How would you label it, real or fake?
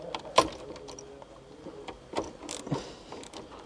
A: real